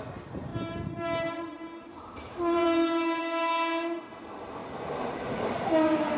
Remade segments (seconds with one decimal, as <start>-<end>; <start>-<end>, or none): 0.5-3.2